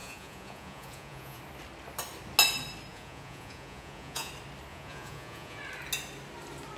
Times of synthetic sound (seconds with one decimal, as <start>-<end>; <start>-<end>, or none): 0.0-1.4; 2.9-4.3; 4.7-5.6